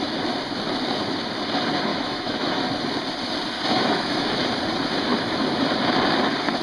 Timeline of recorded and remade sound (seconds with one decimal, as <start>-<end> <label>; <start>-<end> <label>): 0.0-1.9 recorded; 1.9-2.6 remade; 2.6-3.7 recorded; 3.7-4.4 remade; 4.4-6.6 recorded